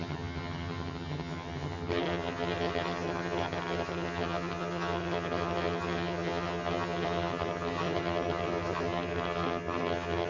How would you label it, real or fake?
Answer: fake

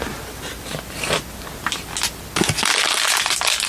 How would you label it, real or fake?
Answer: real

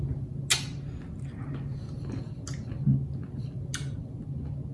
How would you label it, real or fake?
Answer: real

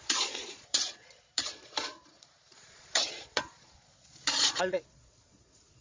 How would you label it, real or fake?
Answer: fake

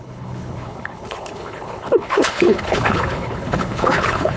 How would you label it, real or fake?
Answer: fake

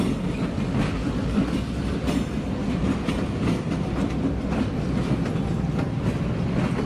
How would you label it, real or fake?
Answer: real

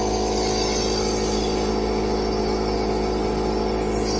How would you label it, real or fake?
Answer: real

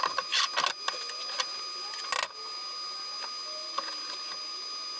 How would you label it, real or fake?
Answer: real